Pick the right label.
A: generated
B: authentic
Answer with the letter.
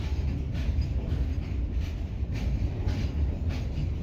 B